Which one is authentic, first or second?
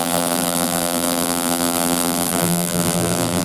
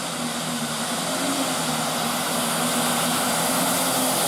second